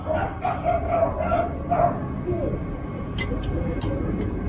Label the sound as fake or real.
real